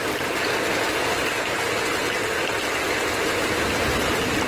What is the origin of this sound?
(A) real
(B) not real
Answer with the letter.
A